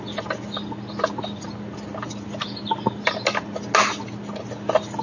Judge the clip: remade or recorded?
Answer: recorded